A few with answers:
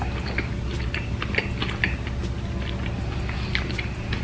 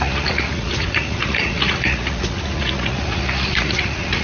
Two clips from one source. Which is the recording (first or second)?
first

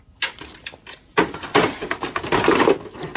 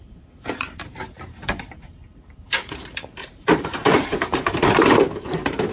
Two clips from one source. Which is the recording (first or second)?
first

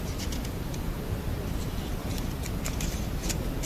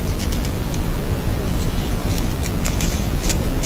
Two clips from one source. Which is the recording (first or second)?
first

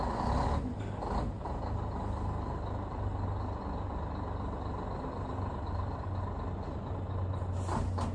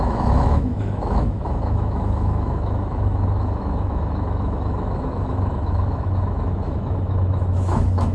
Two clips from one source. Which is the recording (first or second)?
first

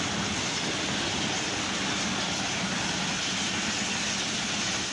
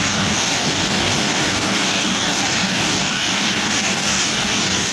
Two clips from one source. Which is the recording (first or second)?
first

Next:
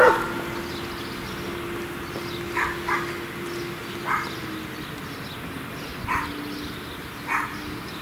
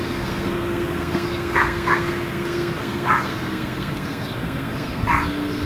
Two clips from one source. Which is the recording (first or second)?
first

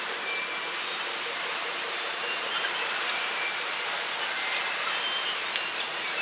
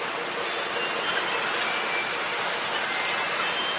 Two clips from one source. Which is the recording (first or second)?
second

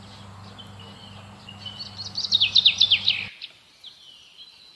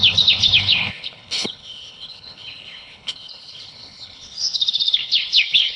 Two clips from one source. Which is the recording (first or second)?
first